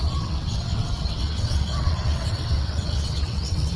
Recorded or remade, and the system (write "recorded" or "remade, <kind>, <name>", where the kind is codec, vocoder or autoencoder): remade, vocoder, WaveNeXt